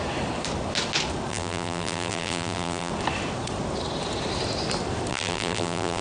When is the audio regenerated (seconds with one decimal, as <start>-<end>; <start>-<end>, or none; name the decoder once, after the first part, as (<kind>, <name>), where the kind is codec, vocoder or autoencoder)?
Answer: 1.3-2.9 (vocoder, BigVGAN v2); 5.1-6.0